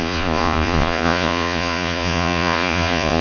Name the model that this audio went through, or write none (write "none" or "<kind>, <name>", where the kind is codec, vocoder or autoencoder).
vocoder, Vocos